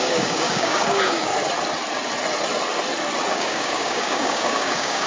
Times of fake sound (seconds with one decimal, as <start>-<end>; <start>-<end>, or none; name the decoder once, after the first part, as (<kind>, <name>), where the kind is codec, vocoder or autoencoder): 0.0-1.3 (codec, DAC); 3.3-5.1